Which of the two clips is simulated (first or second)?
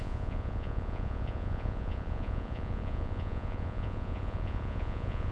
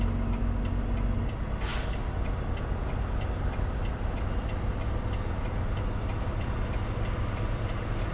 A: first